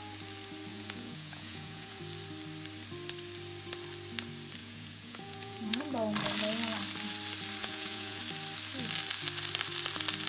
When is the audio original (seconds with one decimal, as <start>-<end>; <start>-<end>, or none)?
0.0-0.7; 2.0-4.6; 5.8-7.6; 8.2-10.3